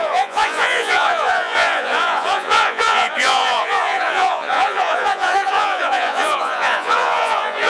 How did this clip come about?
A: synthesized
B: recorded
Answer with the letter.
A